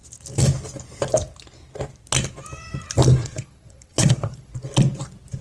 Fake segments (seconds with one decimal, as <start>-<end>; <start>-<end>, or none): 3.2-4.5